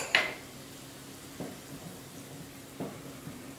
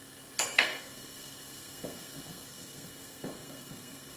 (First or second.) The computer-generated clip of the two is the second